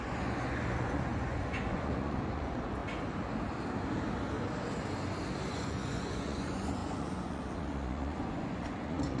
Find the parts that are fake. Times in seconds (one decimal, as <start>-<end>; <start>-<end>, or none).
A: 0.0-2.8; 5.5-9.2